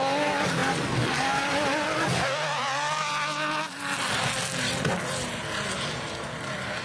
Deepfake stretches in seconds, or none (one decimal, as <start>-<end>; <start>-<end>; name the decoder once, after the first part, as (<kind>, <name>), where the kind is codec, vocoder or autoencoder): none